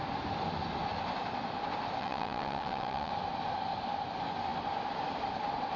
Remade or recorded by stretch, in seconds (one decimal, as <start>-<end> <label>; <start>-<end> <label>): 0.0-2.0 recorded; 2.0-3.1 remade; 3.1-5.8 recorded